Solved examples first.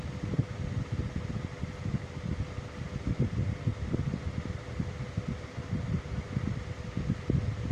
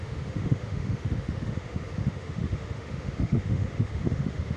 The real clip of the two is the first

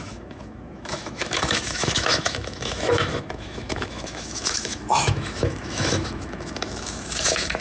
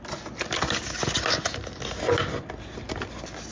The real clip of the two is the second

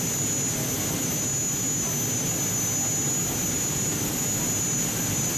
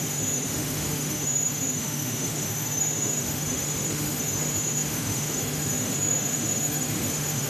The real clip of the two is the first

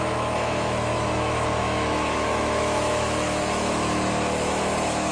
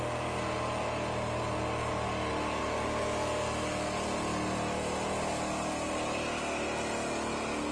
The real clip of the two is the second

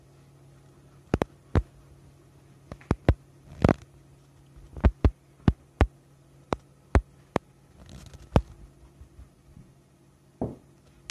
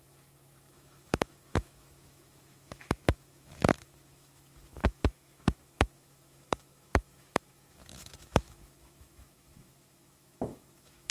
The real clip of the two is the first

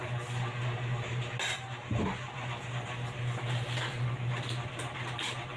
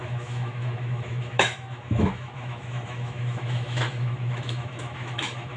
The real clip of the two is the first